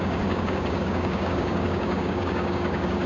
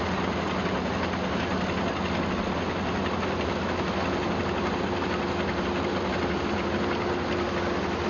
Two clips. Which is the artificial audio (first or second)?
first